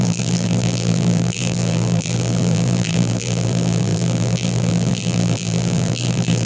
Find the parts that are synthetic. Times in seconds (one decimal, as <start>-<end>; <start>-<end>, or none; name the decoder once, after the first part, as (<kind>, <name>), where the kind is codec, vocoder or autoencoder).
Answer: 0.0-6.5 (vocoder, BigVGAN v2)